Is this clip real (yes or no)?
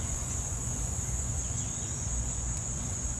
no